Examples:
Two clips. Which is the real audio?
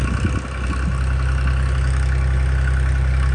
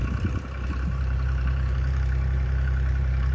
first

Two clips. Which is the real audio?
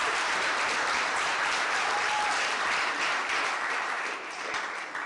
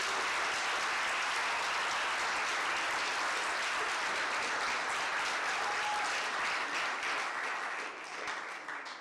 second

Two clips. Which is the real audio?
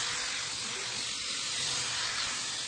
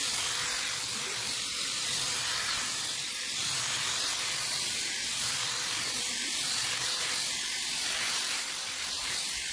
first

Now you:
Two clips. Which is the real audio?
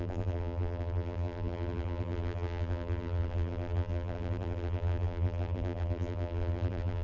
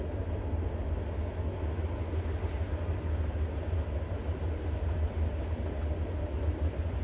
second